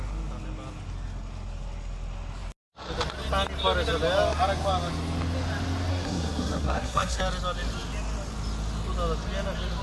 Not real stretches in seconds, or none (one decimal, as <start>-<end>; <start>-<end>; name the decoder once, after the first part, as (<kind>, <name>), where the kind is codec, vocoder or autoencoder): 5.9-7.2 (codec, SNAC)